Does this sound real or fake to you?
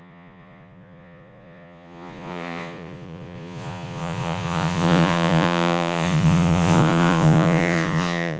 fake